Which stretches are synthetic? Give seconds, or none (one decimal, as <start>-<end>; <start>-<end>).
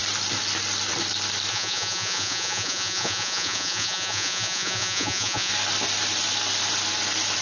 1.5-5.5